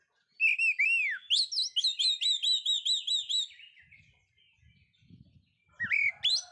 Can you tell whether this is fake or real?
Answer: real